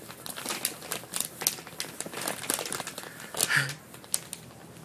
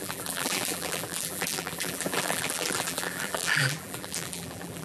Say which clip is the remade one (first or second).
second